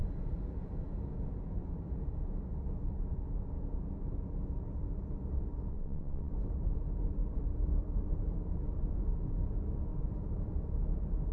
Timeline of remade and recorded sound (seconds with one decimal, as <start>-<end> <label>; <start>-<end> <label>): 0.0-5.7 recorded; 5.7-6.3 remade; 6.3-11.3 recorded

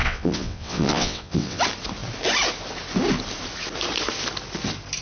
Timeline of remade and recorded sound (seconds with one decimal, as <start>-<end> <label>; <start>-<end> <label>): 0.0-1.6 remade; 1.6-5.0 recorded

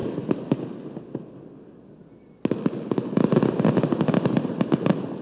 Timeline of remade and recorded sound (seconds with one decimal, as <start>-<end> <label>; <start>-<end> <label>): 0.0-5.2 recorded